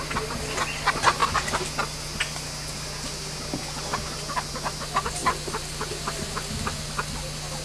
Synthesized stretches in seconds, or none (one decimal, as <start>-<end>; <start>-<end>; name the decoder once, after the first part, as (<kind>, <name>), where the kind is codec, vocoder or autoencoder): none